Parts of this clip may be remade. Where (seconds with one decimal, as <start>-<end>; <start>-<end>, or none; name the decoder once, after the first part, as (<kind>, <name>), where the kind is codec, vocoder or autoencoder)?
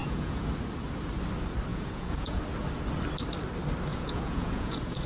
0.0-0.5 (vocoder, Vocos); 1.7-2.4; 3.9-5.1